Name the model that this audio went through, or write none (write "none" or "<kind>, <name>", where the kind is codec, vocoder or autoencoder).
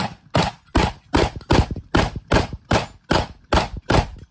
none